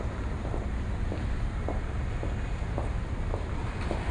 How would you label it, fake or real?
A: real